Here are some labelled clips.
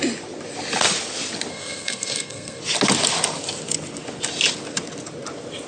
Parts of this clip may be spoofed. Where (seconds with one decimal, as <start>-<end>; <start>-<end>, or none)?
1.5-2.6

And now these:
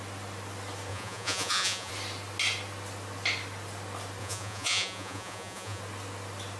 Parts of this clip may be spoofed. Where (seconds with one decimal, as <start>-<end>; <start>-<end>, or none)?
0.9-1.9; 4.2-5.8

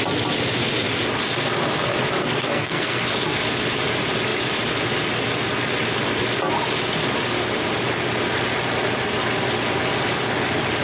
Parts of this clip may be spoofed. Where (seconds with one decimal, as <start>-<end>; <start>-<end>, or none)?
2.2-3.0

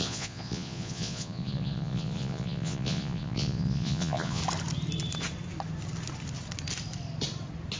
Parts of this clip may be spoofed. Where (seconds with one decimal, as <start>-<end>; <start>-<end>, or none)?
0.0-4.4

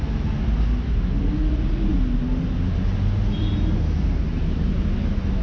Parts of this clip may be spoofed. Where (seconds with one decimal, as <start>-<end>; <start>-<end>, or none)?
none

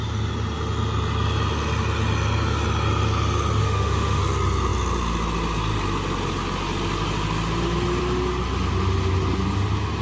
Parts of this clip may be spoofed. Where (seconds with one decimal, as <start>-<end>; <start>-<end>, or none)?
3.6-4.2

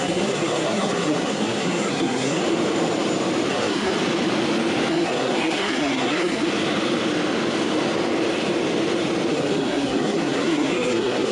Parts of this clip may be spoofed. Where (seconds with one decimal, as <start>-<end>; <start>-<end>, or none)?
0.0-2.4; 3.5-3.9; 4.9-6.5; 9.3-11.3

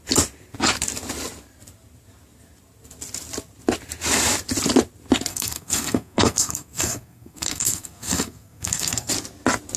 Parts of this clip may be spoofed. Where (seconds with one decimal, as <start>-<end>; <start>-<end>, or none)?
5.3-9.1